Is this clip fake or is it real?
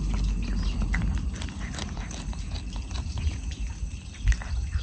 real